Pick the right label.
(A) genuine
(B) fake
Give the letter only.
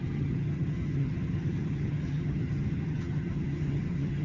B